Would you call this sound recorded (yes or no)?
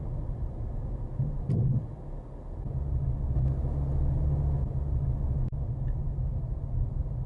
yes